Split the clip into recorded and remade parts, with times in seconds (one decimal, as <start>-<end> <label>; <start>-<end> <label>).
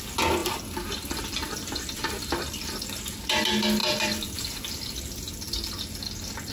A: 0.0-0.4 recorded; 0.4-2.9 remade; 2.9-3.8 recorded; 3.8-5.0 remade; 5.0-6.5 recorded